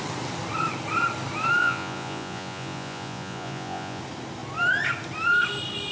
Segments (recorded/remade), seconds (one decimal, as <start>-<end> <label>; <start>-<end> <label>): 0.0-1.6 recorded; 1.6-4.0 remade; 4.0-5.9 recorded